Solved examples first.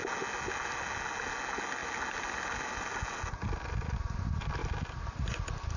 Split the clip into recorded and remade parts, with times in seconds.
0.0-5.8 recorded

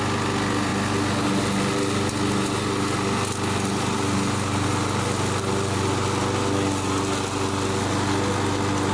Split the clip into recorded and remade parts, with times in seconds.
0.0-8.9 recorded

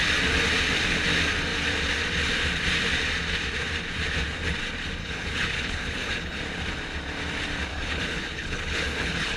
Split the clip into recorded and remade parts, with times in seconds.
0.0-5.0 recorded; 5.0-6.4 remade; 6.4-7.7 recorded; 7.7-9.4 remade

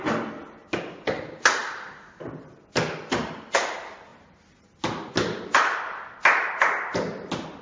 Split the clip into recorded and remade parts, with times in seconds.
0.0-7.6 recorded

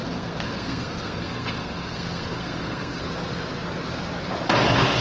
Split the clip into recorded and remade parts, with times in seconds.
0.0-3.0 remade; 3.0-5.0 recorded

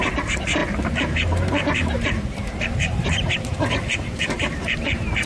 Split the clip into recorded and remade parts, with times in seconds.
0.0-5.3 remade

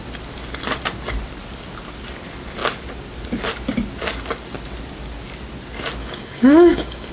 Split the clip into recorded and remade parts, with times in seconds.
0.0-6.0 recorded; 6.0-7.1 remade

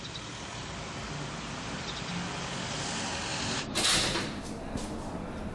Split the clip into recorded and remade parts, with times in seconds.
0.0-3.3 recorded; 3.3-4.4 remade; 4.4-5.5 recorded